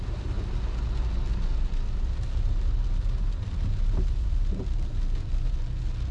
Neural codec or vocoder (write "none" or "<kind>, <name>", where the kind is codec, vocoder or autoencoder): none